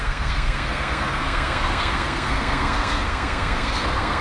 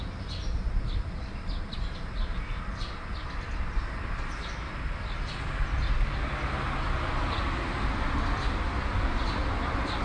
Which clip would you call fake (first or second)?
first